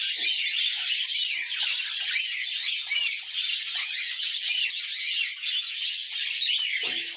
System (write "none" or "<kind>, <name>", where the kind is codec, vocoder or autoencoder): none